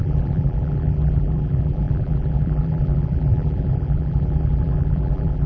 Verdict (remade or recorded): remade